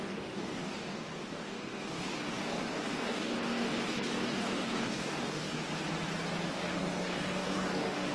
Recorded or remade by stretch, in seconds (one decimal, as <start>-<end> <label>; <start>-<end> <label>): 0.0-5.7 remade; 5.7-6.5 recorded; 6.5-8.1 remade